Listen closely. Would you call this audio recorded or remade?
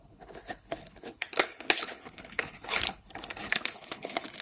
remade